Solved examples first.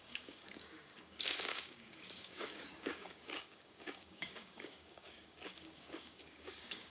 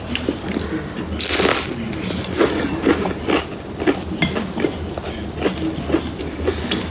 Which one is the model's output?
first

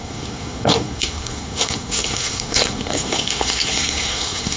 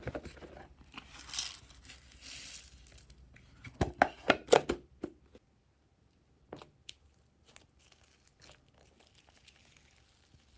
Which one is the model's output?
first